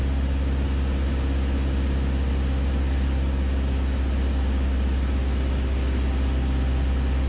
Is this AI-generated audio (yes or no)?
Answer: no